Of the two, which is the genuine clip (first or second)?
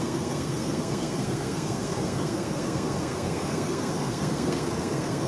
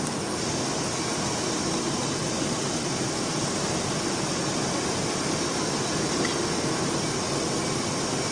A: second